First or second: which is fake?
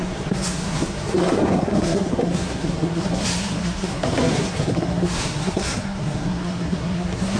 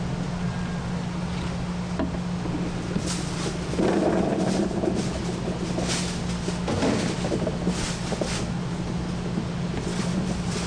first